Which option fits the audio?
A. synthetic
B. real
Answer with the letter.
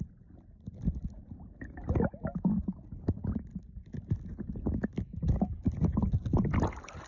B